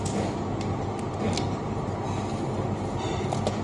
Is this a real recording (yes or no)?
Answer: yes